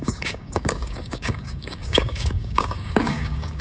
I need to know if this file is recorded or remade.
remade